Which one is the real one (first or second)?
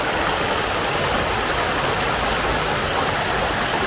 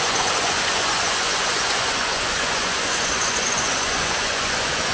first